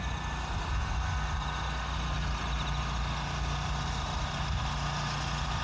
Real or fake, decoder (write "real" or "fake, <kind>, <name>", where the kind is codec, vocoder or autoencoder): real